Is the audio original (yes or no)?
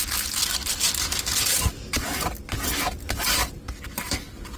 yes